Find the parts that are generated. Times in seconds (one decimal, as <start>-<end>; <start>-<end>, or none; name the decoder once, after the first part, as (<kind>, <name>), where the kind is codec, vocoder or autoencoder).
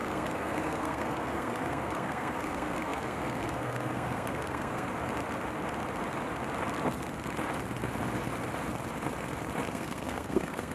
0.0-4.9 (codec, SNAC); 9.7-10.7